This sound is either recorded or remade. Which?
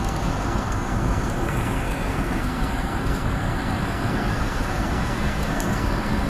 remade